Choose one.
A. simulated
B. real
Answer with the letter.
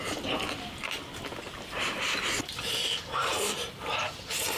B